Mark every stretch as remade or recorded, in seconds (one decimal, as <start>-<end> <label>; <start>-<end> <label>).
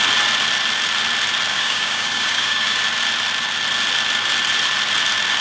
0.0-1.5 recorded; 1.5-2.8 remade; 2.8-5.4 recorded